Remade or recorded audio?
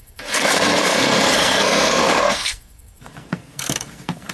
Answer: remade